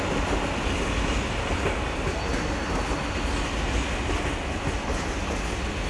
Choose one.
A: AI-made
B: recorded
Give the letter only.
B